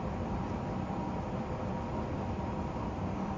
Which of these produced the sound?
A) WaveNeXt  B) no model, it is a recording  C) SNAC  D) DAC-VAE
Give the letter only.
B